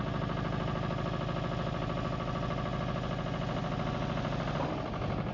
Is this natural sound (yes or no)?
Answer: yes